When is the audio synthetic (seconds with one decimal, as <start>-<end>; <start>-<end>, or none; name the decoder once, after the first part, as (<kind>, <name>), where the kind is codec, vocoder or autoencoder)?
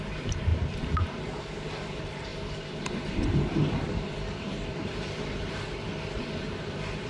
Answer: 0.0-7.1 (vocoder, BigVGAN v2)